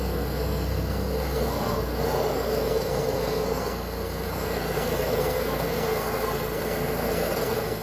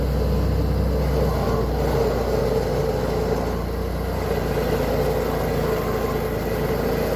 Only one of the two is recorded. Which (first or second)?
second